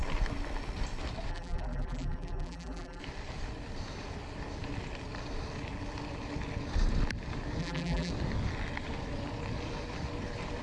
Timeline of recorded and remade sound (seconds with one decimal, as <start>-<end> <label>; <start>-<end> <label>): 0.0-1.3 recorded; 1.3-3.0 remade; 3.0-7.6 recorded; 7.6-8.1 remade; 8.1-10.6 recorded